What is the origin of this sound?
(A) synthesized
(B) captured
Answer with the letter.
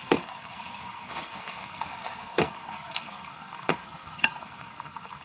A